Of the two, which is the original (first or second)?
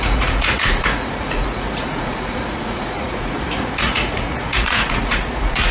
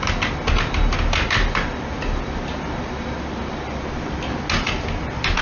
second